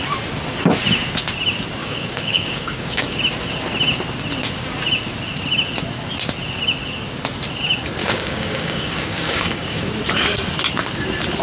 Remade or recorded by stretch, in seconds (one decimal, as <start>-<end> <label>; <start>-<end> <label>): 0.0-1.8 recorded; 1.8-3.2 remade; 3.2-8.0 recorded; 8.0-9.9 remade; 9.9-11.4 recorded